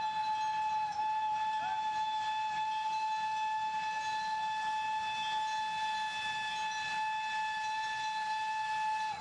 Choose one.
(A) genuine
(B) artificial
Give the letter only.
A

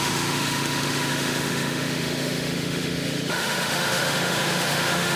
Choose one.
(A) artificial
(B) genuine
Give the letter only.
A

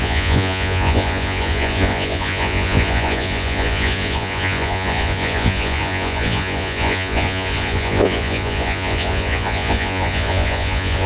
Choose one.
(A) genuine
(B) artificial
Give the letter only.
B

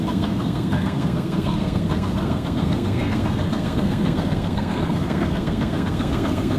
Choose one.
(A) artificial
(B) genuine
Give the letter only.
A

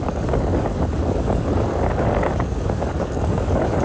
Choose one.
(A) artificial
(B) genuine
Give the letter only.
A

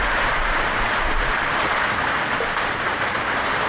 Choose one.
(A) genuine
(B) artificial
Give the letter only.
A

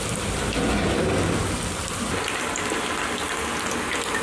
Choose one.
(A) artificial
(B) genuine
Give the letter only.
B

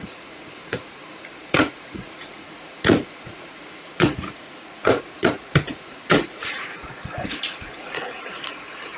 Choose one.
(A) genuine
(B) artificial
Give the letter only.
B